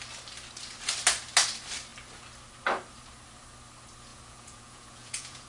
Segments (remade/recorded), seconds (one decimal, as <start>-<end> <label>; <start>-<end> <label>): 0.0-4.1 recorded; 4.1-5.5 remade